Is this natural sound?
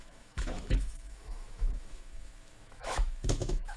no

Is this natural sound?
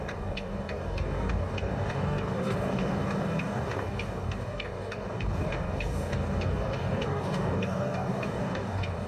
no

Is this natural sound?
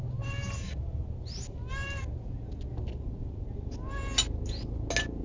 yes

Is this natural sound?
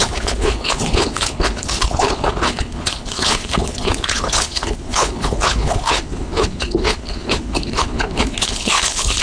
no